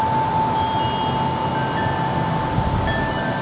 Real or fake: real